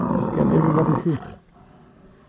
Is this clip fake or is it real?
real